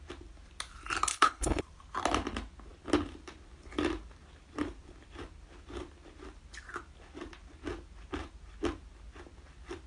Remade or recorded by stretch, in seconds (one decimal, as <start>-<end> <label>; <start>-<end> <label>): 0.0-1.1 recorded; 1.1-1.6 remade; 1.6-9.9 recorded